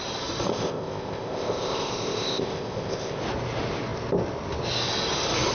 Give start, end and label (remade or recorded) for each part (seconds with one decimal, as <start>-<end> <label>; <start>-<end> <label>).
0.0-0.5 recorded; 0.5-3.2 remade; 3.2-5.5 recorded